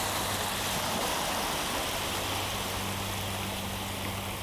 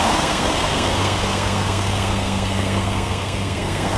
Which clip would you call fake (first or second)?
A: second